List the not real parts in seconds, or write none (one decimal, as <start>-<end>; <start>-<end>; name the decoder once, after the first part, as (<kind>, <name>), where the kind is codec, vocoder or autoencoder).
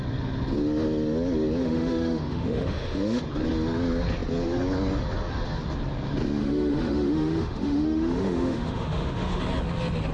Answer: 1.6-3.2 (autoencoder, DAC-VAE); 6.4-9.4